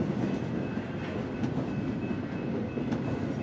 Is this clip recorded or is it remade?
recorded